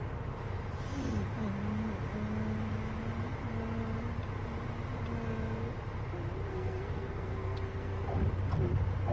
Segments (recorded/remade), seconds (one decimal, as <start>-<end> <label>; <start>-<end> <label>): 0.0-6.5 recorded; 6.5-8.0 remade; 8.0-9.1 recorded